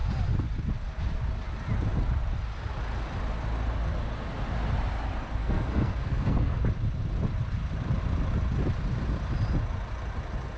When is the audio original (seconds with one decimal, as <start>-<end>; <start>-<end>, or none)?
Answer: 0.0-5.4; 6.6-10.6